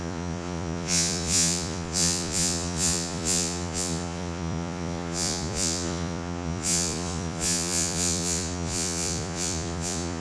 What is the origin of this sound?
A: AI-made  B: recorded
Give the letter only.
A